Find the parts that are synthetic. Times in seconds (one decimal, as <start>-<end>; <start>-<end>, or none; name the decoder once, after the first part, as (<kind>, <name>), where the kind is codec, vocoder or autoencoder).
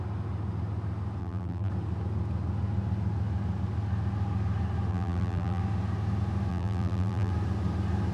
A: 1.2-1.7 (vocoder, BigVGAN v2); 4.9-5.6; 6.5-7.3